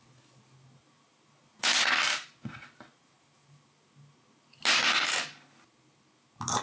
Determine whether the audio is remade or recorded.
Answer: recorded